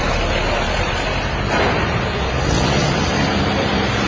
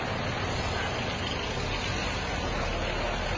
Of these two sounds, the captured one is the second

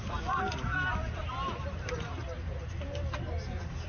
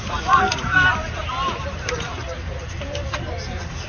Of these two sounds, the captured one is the first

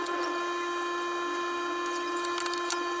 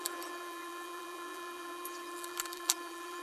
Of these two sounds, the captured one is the first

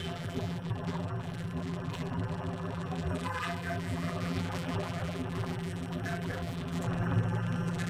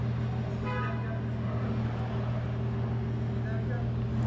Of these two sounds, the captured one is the second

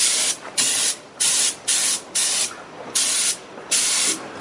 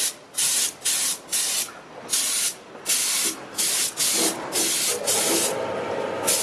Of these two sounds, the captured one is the second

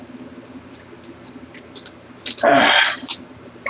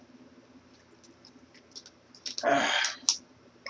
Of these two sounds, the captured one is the second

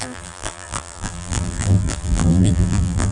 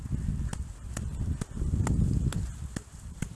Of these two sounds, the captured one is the second